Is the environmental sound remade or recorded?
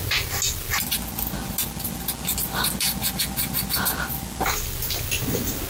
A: recorded